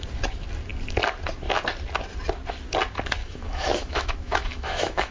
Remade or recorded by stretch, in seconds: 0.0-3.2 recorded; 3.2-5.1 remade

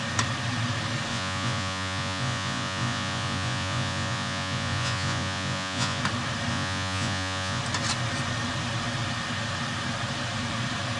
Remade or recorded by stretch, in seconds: 0.0-1.1 recorded; 1.1-6.0 remade; 6.0-6.5 recorded; 6.5-7.6 remade; 7.6-11.0 recorded

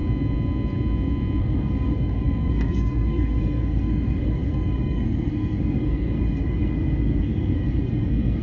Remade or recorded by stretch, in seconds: 0.0-1.4 recorded; 1.4-8.4 remade

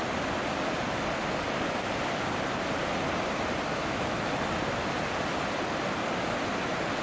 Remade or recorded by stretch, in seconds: 0.0-3.7 recorded; 3.7-4.2 remade; 4.2-7.0 recorded

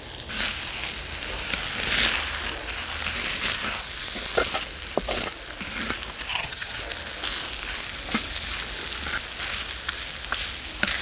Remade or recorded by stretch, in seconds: 0.0-6.3 recorded; 6.3-6.8 remade; 6.8-11.0 recorded